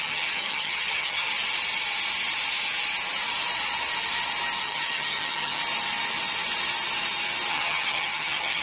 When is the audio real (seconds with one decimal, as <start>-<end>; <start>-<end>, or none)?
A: 1.3-4.6; 5.6-7.5

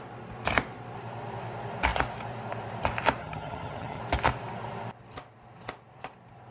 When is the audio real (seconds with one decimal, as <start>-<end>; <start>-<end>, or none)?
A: 0.0-3.2; 4.0-6.5

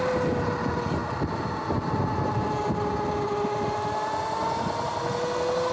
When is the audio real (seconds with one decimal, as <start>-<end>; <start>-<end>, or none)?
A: 0.0-5.7

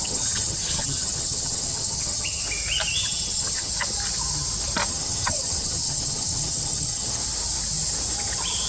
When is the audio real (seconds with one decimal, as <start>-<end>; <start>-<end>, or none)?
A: 2.4-2.9; 3.7-4.9; 7.2-8.7

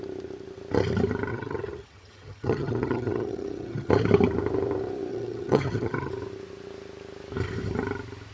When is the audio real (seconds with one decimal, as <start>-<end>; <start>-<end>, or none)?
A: 0.0-1.3; 3.9-5.1; 6.1-8.3

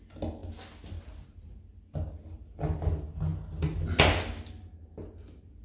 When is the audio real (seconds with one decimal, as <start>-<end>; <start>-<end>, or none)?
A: 0.0-5.6